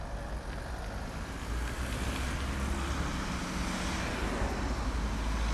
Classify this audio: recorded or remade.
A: recorded